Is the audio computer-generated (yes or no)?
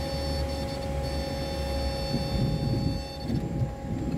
no